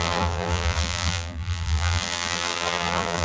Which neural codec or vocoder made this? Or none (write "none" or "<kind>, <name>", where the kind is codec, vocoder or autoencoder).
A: vocoder, BigVGAN v2